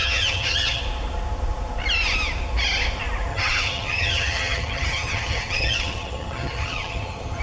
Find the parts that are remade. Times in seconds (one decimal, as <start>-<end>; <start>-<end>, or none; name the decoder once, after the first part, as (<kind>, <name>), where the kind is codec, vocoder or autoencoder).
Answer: 0.0-0.8 (vocoder, HiFi-GAN); 3.3-7.4